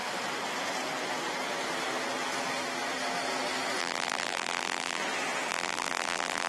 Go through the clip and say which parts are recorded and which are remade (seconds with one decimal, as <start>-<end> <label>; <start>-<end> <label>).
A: 0.0-3.8 recorded; 3.8-5.0 remade; 5.0-5.5 recorded; 5.5-6.5 remade

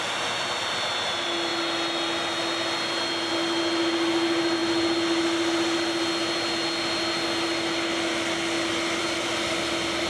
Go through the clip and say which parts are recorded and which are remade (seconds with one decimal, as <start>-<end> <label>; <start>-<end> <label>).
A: 0.0-10.1 recorded

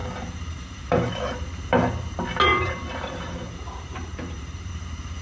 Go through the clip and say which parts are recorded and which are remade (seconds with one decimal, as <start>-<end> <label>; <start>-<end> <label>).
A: 0.0-1.1 remade; 1.1-2.5 recorded; 2.5-4.7 remade; 4.7-5.2 recorded

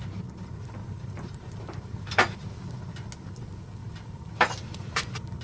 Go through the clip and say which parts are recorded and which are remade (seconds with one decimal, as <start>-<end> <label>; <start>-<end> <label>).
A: 0.0-0.8 recorded; 0.8-2.4 remade; 2.4-3.8 recorded; 3.8-5.0 remade; 5.0-5.4 recorded